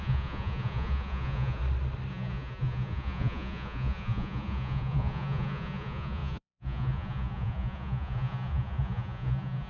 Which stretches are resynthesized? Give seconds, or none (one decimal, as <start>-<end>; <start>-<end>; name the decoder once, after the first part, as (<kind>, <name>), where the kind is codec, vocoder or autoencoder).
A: 0.0-1.6 (vocoder, Vocos); 2.1-9.7